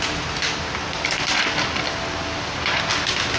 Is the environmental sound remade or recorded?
recorded